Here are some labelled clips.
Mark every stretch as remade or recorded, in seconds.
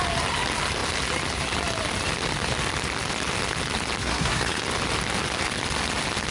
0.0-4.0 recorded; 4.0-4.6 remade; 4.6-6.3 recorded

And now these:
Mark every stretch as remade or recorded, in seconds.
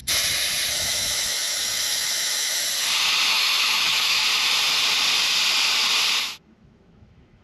0.0-0.7 recorded; 0.7-2.6 remade; 2.6-3.3 recorded; 3.3-4.2 remade; 4.2-6.2 recorded; 6.2-7.4 remade